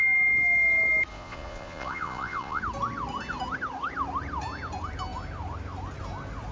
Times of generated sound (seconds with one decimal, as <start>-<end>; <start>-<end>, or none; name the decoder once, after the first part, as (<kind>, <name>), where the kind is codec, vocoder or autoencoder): 1.1-2.6 (vocoder, Vocos)